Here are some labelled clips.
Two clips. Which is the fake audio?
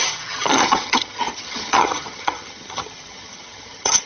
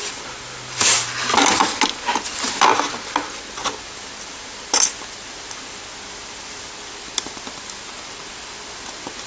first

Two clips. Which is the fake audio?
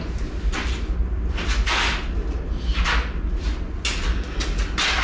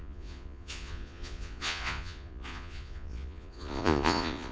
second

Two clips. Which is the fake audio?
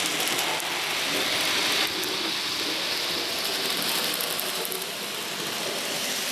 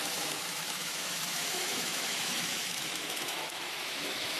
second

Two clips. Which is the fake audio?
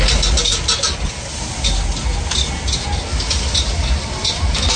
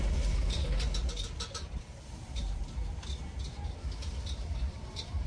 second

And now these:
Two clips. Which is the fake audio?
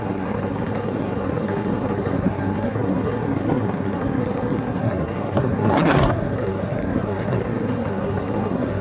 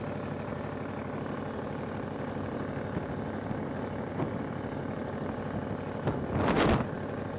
first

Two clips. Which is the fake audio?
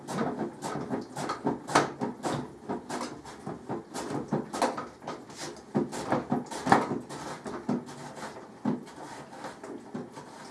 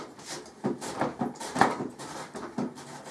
second